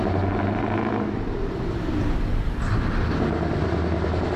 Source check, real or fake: real